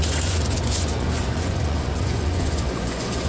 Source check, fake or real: fake